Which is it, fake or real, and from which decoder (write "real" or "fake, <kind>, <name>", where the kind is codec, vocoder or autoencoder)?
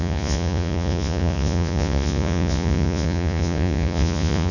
fake, vocoder, Vocos